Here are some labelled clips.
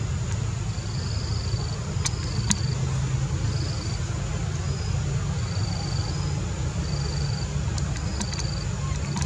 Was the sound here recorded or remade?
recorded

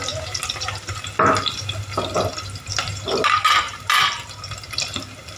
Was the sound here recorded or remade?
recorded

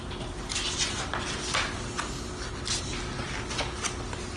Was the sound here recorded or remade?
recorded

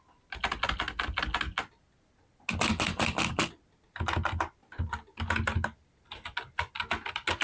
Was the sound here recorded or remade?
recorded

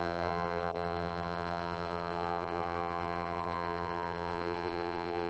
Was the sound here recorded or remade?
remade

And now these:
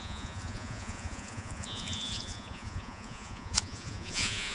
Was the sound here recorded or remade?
remade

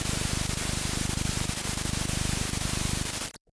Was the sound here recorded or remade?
remade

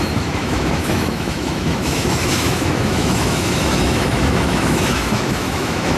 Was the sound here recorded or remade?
remade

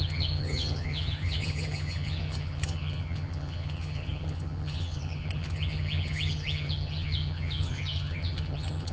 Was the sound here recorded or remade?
remade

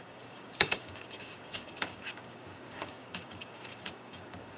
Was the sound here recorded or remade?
remade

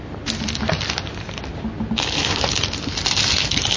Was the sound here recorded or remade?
recorded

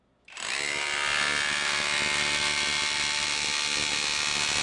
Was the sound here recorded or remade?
recorded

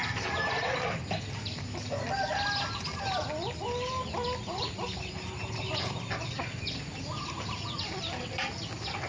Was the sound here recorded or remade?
recorded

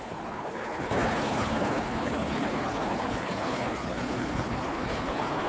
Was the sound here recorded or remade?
remade